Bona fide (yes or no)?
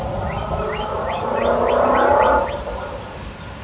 yes